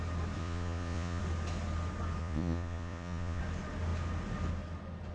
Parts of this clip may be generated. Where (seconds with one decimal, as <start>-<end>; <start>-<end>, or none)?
0.4-1.2; 2.2-3.4